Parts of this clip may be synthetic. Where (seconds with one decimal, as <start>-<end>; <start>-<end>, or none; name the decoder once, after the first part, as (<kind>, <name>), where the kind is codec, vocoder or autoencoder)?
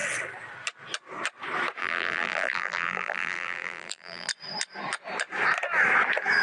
1.8-4.3 (vocoder, BigVGAN v2)